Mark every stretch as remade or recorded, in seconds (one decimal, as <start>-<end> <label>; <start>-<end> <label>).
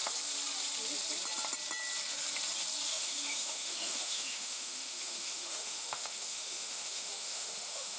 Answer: 0.0-2.9 recorded; 2.9-8.0 remade